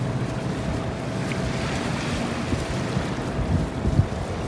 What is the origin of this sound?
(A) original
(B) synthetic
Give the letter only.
A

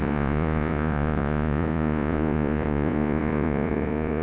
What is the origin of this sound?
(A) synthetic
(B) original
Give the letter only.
A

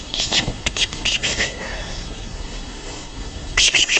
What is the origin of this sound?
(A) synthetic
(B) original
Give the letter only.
A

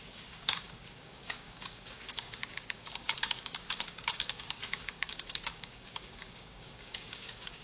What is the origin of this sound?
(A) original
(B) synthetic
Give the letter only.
B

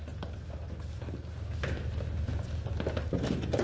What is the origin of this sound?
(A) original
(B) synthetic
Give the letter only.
A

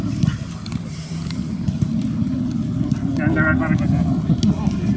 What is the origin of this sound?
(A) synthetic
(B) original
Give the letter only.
B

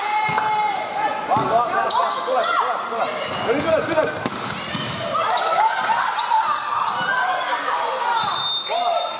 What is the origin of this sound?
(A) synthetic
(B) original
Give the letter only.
B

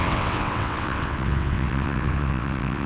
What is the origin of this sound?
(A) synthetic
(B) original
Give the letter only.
A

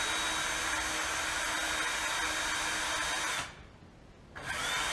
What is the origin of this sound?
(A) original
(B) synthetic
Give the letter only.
A